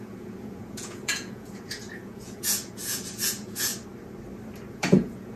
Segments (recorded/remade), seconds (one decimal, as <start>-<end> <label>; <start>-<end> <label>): 0.0-3.7 remade; 3.7-4.7 recorded; 4.7-5.4 remade